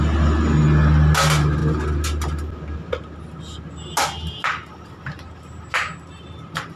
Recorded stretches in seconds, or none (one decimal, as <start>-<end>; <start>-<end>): 0.0-6.8